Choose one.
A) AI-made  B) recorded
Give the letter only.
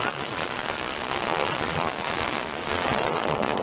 A